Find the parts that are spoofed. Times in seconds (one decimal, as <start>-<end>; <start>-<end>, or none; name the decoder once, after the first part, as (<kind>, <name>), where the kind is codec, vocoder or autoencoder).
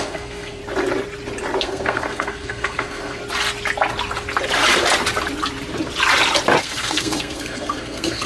0.0-0.6 (codec, SNAC); 1.6-3.2; 6.6-8.3